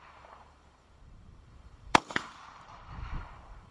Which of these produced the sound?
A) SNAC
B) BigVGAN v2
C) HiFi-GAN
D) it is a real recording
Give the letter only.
B